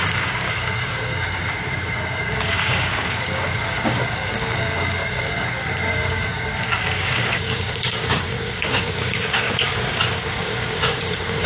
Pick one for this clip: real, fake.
fake